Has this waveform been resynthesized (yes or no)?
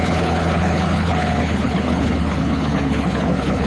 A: yes